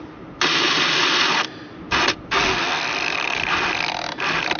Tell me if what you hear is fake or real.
real